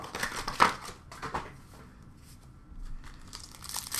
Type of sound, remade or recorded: recorded